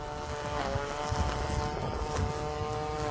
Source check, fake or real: real